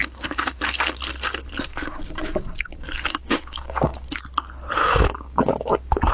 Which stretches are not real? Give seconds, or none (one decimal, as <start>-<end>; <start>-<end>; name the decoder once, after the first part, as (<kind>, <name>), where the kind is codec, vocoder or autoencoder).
0.0-0.6 (codec, DAC); 1.7-4.2; 4.8-6.1